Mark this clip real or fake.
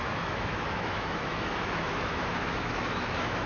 fake